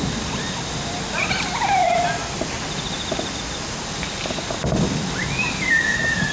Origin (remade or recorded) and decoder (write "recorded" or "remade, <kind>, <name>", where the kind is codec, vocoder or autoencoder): recorded